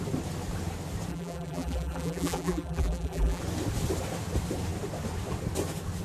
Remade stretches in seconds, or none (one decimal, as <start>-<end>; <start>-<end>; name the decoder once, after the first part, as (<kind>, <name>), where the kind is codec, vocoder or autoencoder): 1.1-3.4 (vocoder, BigVGAN v2)